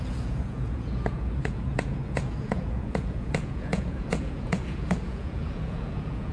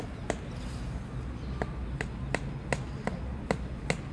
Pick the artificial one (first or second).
first